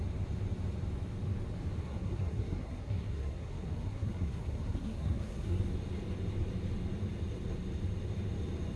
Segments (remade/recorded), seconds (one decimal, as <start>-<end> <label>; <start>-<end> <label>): 0.0-1.8 recorded; 1.8-5.6 remade; 5.6-8.8 recorded